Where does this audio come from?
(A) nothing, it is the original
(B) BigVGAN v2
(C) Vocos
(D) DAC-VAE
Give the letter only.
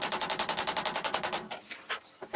B